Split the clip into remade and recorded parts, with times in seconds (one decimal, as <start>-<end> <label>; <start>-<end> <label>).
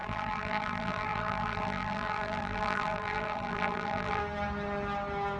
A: 0.0-4.2 remade; 4.2-5.4 recorded